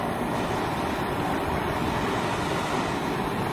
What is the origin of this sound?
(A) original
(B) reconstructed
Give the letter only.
A